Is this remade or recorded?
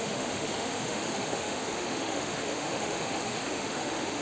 remade